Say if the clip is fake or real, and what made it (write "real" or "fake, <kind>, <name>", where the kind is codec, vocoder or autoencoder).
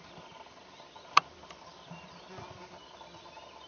real